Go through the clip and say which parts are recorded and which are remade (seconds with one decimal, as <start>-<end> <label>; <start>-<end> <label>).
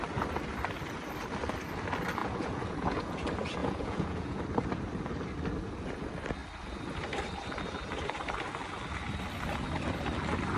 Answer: 0.0-2.2 recorded; 2.2-3.0 remade; 3.0-3.6 recorded; 3.6-4.4 remade; 4.4-10.6 recorded